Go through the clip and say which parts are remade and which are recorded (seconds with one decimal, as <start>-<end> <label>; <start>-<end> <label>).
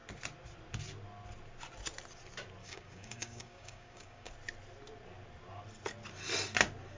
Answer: 0.0-2.6 recorded; 2.6-4.3 remade; 4.3-7.0 recorded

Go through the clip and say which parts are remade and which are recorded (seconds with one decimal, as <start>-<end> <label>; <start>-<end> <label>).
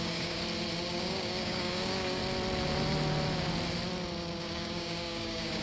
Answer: 0.0-0.4 remade; 0.4-0.9 recorded; 0.9-2.2 remade; 2.2-4.4 recorded; 4.4-5.6 remade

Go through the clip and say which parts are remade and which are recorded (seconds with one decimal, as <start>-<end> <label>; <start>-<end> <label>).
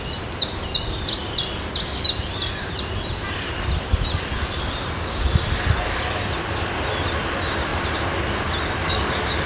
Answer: 0.0-8.8 recorded; 8.8-9.5 remade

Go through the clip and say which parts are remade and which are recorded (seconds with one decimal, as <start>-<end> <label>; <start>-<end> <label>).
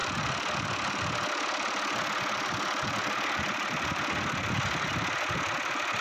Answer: 0.0-6.0 recorded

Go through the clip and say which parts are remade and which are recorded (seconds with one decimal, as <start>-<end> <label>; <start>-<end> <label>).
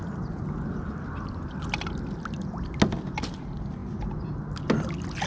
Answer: 0.0-5.3 recorded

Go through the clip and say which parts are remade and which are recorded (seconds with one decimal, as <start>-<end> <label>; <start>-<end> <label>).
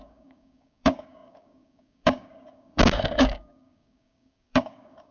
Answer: 0.0-5.1 remade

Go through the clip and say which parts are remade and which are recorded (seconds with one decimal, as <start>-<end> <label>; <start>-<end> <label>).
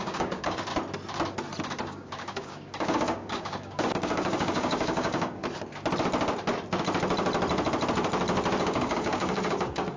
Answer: 0.0-0.7 remade; 0.7-1.8 recorded; 1.8-5.4 remade; 5.4-8.6 recorded; 8.6-10.0 remade